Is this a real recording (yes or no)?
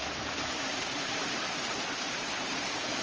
no